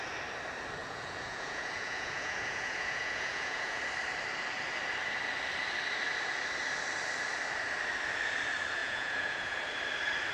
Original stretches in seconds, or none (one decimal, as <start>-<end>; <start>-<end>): 0.0-0.8; 3.8-8.8; 9.6-10.3